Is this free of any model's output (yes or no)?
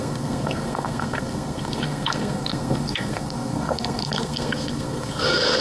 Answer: no